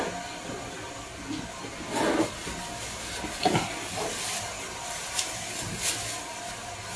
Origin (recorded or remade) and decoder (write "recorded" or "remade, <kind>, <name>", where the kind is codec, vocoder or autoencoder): recorded